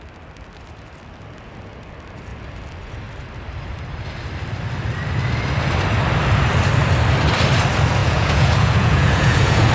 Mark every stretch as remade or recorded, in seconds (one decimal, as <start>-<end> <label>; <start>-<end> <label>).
0.0-8.0 recorded; 8.0-9.7 remade